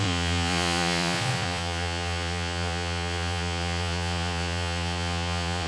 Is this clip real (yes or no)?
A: no